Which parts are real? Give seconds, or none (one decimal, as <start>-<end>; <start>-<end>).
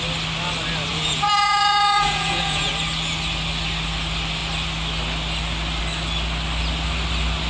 0.0-0.9; 2.7-7.5